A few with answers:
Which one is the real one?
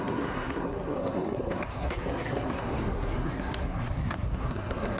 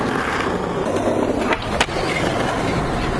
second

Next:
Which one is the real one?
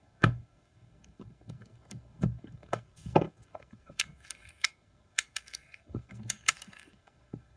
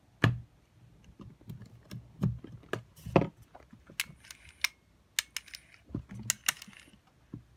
second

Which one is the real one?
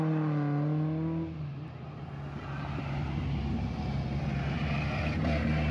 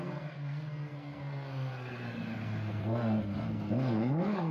first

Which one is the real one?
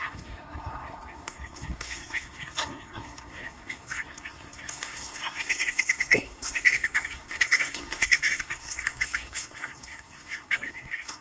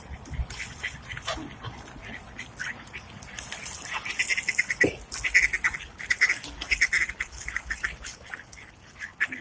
second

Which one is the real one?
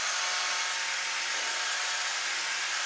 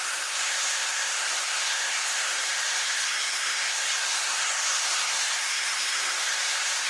first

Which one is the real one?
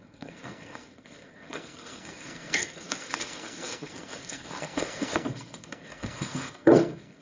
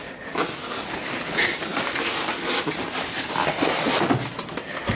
second